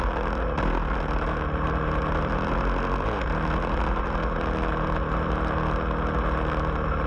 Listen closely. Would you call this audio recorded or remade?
recorded